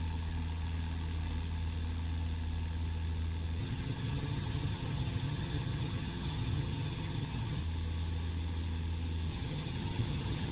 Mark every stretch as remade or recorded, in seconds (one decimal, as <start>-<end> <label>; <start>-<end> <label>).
0.0-3.6 recorded; 3.6-7.6 remade; 7.6-9.3 recorded; 9.3-10.5 remade

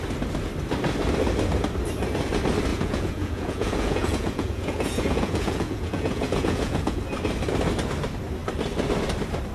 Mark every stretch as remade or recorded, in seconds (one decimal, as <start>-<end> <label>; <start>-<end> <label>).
0.0-2.7 recorded; 2.7-7.0 remade; 7.0-9.5 recorded

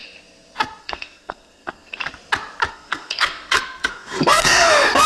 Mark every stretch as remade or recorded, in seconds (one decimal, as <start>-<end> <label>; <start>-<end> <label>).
0.0-0.8 recorded; 0.8-2.0 remade; 2.0-2.7 recorded; 2.7-5.1 remade

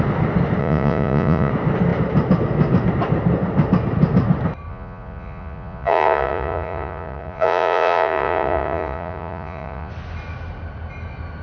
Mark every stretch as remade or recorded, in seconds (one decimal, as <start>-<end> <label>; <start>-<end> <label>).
0.0-0.6 recorded; 0.6-1.5 remade; 1.5-4.7 recorded; 4.7-9.9 remade; 9.9-11.4 recorded

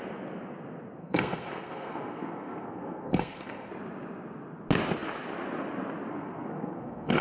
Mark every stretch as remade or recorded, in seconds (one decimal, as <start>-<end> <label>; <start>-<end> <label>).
0.0-1.0 recorded; 1.0-3.7 remade; 3.7-6.1 recorded; 6.1-7.2 remade

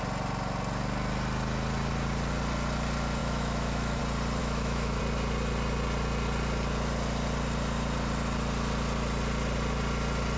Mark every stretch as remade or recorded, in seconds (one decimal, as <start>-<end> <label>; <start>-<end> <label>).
0.0-3.2 recorded; 3.2-4.0 remade; 4.0-4.4 recorded; 4.4-5.0 remade; 5.0-10.4 recorded

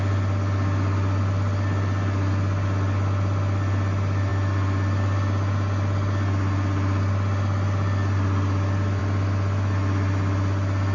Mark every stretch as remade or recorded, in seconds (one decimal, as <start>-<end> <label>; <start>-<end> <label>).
0.0-10.9 recorded

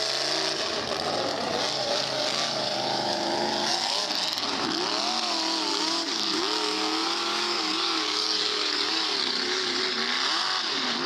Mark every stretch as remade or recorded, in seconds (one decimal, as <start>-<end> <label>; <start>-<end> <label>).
0.0-1.3 recorded; 1.3-4.1 remade; 4.1-5.7 recorded; 5.7-9.8 remade; 9.8-11.1 recorded